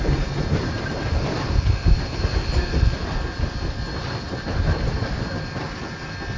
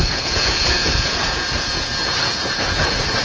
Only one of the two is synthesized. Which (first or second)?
second